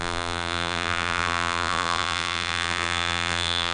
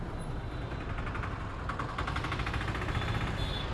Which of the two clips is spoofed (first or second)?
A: first